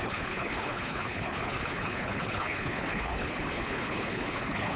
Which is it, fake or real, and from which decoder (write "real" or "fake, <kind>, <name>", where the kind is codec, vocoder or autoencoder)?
fake, codec, HILCodec